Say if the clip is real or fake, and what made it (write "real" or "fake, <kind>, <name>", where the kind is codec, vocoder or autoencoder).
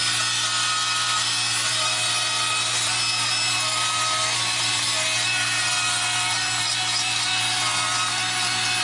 real